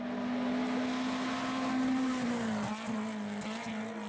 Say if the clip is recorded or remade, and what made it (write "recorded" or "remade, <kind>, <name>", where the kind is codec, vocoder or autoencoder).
recorded